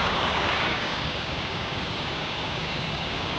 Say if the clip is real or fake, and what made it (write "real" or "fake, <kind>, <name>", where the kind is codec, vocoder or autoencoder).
fake, codec, DAC